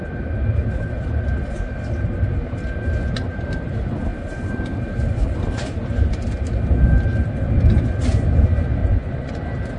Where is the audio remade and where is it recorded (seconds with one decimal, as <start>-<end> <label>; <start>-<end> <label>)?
0.0-8.8 recorded; 8.8-9.3 remade; 9.3-9.8 recorded